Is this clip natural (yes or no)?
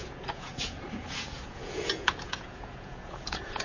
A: no